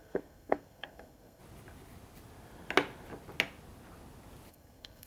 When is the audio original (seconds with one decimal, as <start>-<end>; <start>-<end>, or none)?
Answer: 1.4-4.5